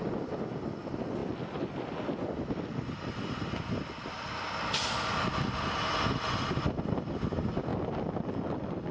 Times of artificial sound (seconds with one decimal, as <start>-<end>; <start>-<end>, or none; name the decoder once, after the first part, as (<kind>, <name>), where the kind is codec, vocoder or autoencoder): none